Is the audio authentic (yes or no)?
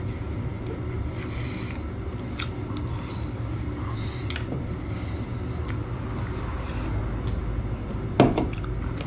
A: yes